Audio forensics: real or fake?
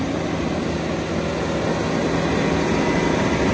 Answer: real